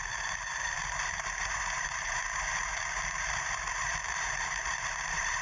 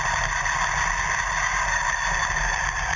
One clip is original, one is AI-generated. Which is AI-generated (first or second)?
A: first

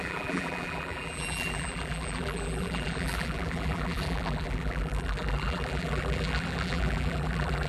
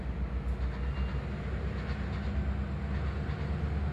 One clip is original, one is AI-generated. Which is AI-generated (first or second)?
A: first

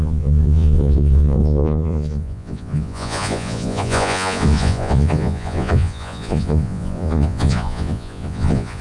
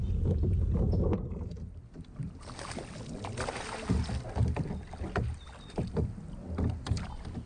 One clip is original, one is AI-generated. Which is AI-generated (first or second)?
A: first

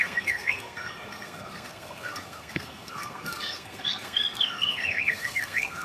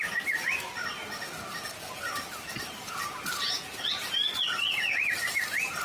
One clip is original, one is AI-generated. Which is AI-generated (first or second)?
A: first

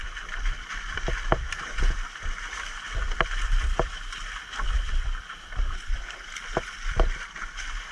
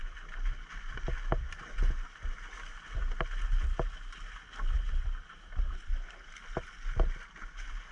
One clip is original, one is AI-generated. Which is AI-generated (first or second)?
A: first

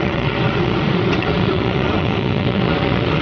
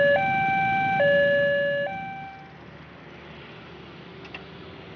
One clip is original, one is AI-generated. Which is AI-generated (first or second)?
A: first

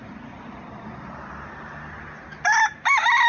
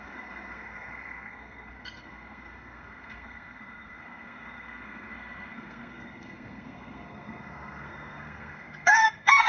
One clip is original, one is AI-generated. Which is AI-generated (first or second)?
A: second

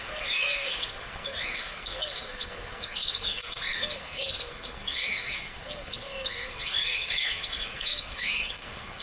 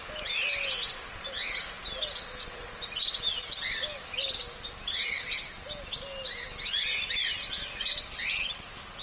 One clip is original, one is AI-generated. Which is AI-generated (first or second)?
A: first